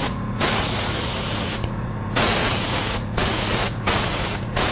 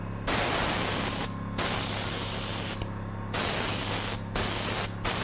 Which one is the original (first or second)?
second